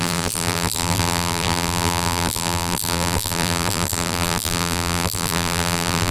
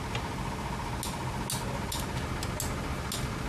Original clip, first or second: second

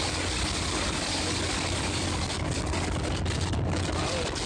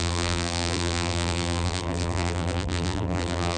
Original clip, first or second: first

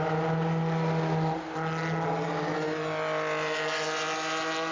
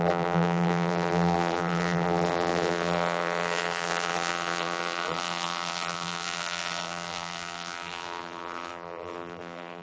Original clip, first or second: first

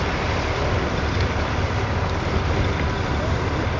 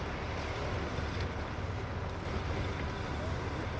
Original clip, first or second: second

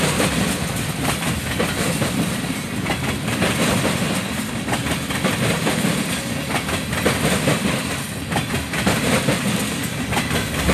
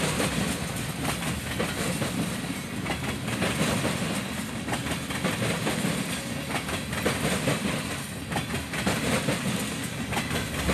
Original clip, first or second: second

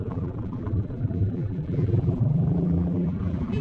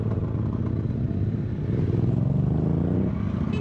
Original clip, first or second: second